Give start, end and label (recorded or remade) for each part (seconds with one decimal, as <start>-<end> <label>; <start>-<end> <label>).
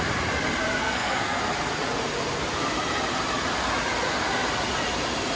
0.0-0.8 recorded; 0.8-1.4 remade; 1.4-5.4 recorded